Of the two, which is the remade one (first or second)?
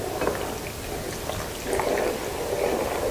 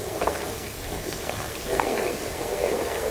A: second